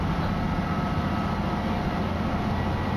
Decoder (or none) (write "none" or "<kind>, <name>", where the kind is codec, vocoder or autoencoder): none